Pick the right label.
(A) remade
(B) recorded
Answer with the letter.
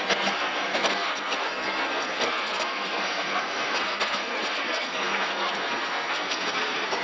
A